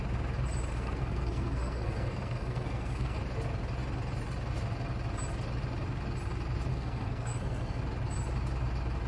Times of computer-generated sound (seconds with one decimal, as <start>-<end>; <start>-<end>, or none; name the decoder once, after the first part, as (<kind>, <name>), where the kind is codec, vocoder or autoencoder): 0.7-3.2 (codec, SNAC); 6.7-7.8